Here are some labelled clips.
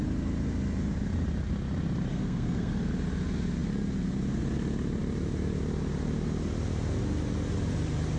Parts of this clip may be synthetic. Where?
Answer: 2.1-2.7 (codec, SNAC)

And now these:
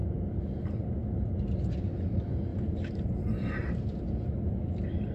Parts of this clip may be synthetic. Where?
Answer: none

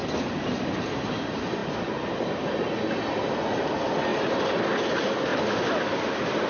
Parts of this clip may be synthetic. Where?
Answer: 0.0-1.0 (vocoder, BigVGAN v2); 1.6-2.8; 4.1-4.6

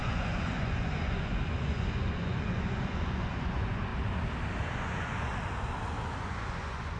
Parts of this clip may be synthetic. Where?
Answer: 0.0-3.9 (vocoder, Vocos); 4.8-5.3; 6.2-7.0

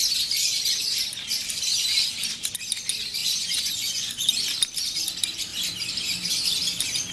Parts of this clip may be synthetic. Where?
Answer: 3.2-4.1 (vocoder, Vocos)

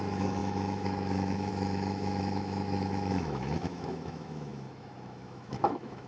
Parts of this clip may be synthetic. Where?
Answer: 0.0-6.1 (autoencoder, DAC-VAE)

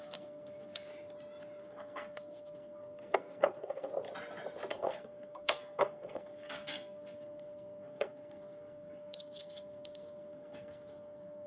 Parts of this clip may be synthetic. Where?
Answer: 0.0-0.9 (codec, SNAC); 1.6-3.9; 4.7-11.5

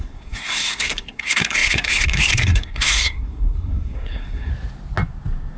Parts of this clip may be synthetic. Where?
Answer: 0.0-4.5 (codec, SNAC)